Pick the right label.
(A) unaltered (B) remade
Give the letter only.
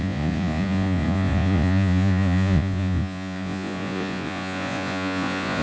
B